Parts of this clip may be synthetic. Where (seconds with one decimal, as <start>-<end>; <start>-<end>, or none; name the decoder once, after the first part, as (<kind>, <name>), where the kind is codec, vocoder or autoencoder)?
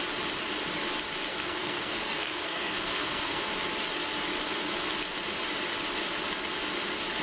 1.3-3.4 (codec, SNAC)